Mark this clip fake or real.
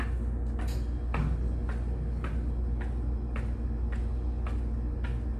real